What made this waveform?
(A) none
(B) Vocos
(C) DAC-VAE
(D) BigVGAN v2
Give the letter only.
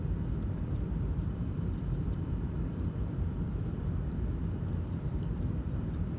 D